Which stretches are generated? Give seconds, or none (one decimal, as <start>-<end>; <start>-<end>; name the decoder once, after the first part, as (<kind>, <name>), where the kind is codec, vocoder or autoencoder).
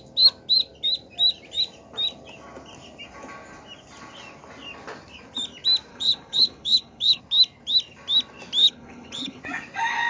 5.9-7.2 (codec, HILCodec); 8.6-9.4